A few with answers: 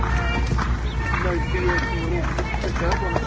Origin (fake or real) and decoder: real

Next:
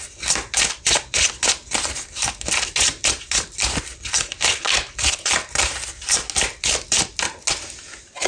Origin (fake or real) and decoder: real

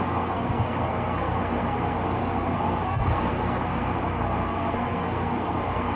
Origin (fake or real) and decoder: fake, codec, SNAC